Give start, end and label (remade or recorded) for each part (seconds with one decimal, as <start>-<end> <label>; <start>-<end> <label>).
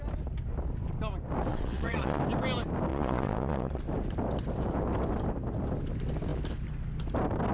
0.0-1.5 recorded; 1.5-2.2 remade; 2.2-2.9 recorded; 2.9-3.8 remade; 3.8-7.5 recorded